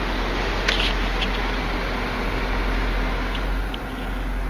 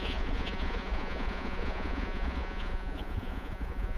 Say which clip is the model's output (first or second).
second